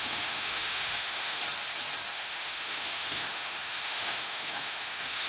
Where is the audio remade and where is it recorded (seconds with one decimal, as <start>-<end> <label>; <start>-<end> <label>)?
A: 0.0-1.4 remade; 1.4-2.1 recorded; 2.1-5.3 remade